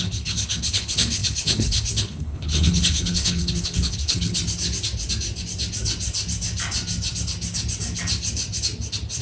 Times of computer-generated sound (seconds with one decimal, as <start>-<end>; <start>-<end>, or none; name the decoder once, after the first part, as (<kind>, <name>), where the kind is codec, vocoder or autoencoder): 0.0-4.4 (codec, HILCodec)